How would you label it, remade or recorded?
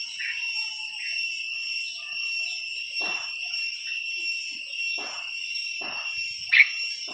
remade